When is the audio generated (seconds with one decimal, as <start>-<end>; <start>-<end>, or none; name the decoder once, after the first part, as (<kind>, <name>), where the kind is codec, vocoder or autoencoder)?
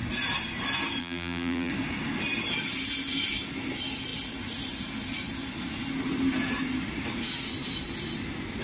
1.0-1.7 (vocoder, BigVGAN v2)